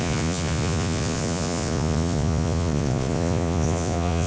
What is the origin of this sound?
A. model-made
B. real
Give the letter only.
A